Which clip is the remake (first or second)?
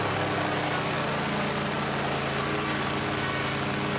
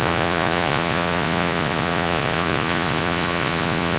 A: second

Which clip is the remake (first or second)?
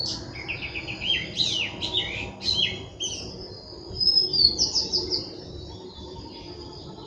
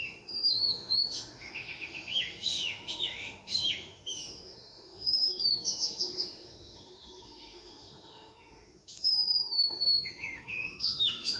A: second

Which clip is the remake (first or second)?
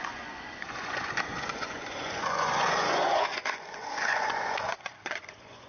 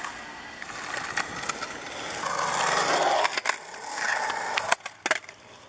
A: first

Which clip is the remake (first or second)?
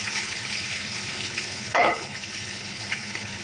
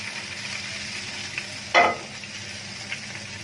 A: first